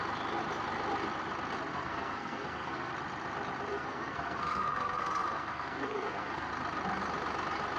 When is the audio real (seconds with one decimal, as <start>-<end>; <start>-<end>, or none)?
0.0-1.7; 2.9-3.7; 6.5-7.8